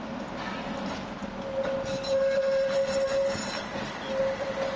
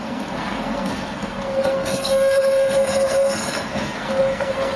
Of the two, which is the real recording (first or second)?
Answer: first